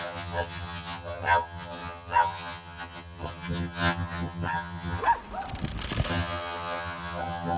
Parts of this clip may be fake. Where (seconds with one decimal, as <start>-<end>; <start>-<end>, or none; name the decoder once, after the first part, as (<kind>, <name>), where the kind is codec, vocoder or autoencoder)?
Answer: 0.0-5.0 (vocoder, HiFi-GAN); 6.1-7.6